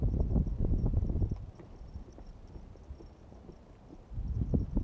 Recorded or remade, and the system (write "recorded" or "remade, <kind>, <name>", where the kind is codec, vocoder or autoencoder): recorded